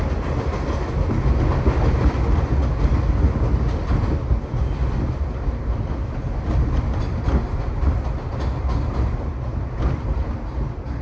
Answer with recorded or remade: recorded